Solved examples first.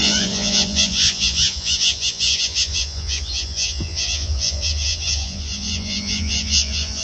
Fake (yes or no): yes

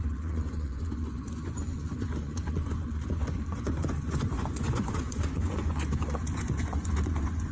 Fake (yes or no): yes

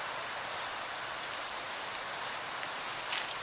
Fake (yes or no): no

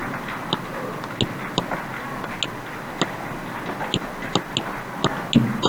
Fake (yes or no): no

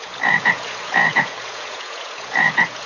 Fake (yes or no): yes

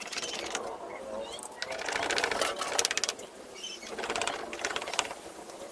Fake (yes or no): no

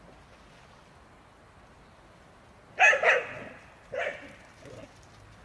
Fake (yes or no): no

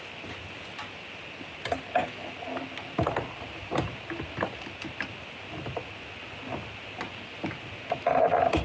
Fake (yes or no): no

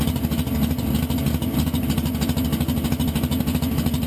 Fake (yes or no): no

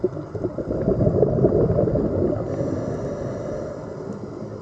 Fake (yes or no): no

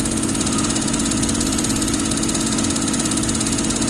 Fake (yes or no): yes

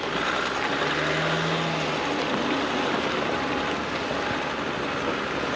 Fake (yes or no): no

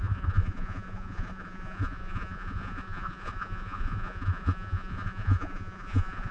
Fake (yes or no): yes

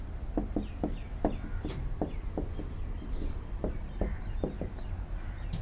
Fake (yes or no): no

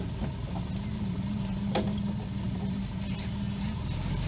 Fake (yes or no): no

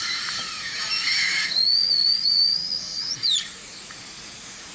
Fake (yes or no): yes